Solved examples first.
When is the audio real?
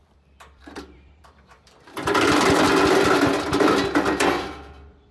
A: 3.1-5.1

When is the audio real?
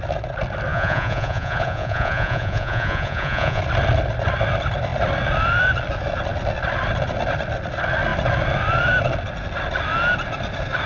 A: 0.0-0.7; 3.6-10.9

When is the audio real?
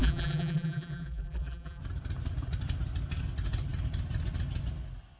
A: 1.8-5.2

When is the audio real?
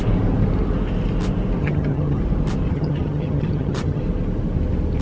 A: 0.0-1.6; 2.2-2.7; 4.0-5.0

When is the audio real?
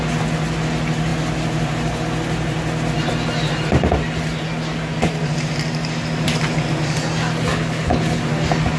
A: 0.0-7.5; 8.2-8.8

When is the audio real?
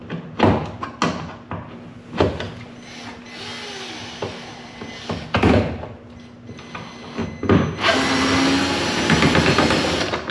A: 0.0-10.3